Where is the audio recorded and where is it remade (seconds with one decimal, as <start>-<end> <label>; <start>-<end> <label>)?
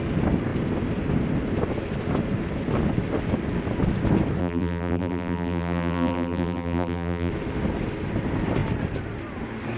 0.0-4.4 recorded; 4.4-7.3 remade; 7.3-9.8 recorded